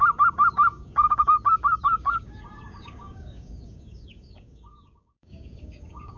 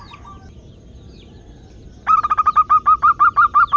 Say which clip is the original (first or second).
second